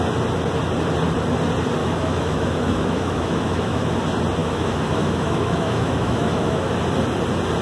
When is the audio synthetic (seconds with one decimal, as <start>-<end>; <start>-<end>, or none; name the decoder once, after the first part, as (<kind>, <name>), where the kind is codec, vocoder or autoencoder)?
1.8-4.0 (autoencoder, DAC-VAE); 4.4-6.7